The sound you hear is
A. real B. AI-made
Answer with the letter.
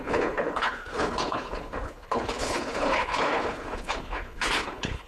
B